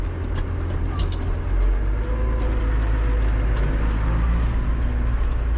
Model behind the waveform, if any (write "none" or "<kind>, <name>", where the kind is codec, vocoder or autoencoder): none